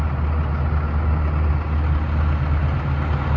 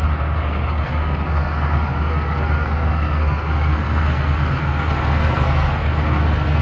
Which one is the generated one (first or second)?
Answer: second